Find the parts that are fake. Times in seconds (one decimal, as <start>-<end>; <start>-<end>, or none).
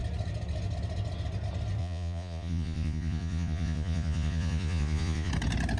1.8-5.3